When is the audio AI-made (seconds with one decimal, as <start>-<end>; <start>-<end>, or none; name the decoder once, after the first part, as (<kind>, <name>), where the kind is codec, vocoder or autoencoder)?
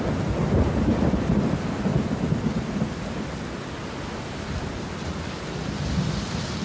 none